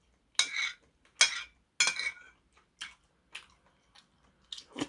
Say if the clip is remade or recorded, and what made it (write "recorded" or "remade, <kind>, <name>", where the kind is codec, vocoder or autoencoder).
recorded